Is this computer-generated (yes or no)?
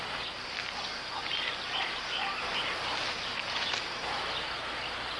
no